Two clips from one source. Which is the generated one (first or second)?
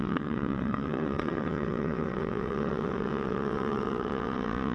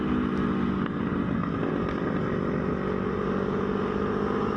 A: first